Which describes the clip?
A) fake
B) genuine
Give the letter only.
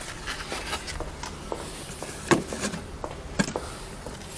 B